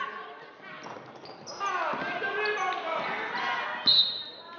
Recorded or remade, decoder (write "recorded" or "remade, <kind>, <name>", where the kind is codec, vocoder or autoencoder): recorded